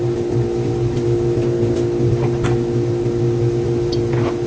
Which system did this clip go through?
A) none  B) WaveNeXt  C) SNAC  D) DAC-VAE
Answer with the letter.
A